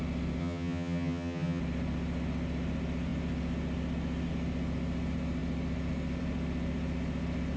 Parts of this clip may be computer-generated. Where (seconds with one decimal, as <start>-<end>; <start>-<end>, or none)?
0.4-1.6